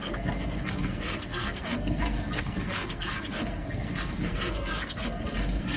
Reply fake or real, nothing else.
fake